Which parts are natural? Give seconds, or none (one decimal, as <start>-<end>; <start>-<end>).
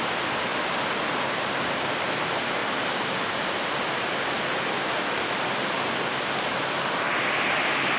0.0-8.0